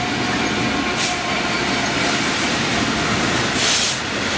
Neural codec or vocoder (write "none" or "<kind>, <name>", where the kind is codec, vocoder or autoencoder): none